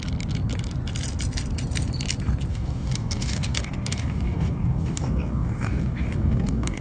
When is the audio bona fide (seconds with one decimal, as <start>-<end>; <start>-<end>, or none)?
0.0-2.5